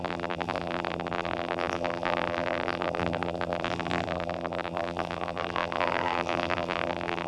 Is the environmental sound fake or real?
fake